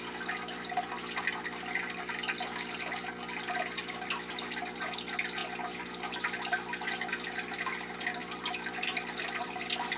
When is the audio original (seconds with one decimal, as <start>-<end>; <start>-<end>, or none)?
0.0-10.0